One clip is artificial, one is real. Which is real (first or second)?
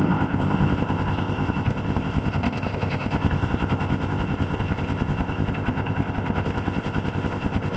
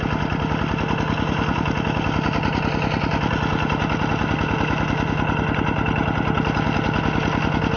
second